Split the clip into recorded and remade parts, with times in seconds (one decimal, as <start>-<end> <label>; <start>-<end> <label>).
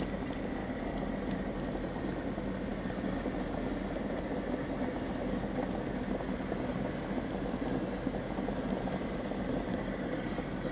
0.0-0.6 recorded; 0.6-1.1 remade; 1.1-9.7 recorded; 9.7-10.7 remade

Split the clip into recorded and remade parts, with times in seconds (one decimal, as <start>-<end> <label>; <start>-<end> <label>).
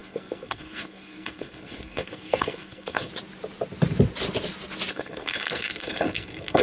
0.0-3.1 remade; 3.1-4.9 recorded; 4.9-6.6 remade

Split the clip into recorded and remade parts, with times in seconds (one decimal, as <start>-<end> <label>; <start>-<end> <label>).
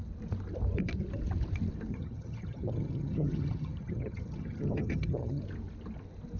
0.0-1.9 recorded; 1.9-5.4 remade; 5.4-6.4 recorded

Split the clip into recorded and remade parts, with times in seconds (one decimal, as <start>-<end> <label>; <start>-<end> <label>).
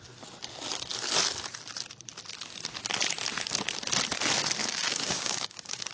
0.0-4.6 recorded; 4.6-5.9 remade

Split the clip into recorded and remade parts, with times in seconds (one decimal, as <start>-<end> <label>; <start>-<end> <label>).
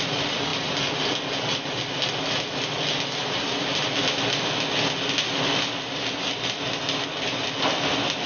0.0-8.3 recorded